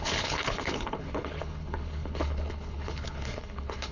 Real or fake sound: fake